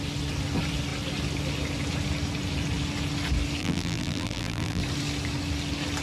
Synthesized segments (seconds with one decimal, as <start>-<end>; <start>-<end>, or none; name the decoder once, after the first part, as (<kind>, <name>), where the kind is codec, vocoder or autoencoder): 3.6-4.8 (vocoder, BigVGAN v2)